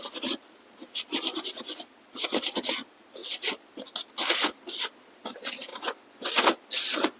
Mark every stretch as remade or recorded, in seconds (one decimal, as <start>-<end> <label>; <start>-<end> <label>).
0.0-5.7 recorded; 5.7-6.3 remade; 6.3-7.2 recorded